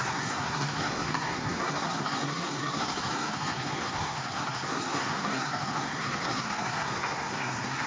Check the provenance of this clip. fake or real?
fake